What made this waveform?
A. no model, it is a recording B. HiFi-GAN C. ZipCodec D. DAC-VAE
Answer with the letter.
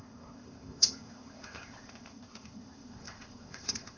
C